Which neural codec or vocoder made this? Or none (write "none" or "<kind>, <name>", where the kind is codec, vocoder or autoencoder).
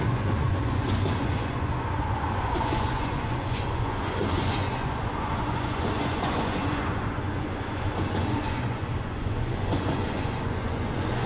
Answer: vocoder, Vocos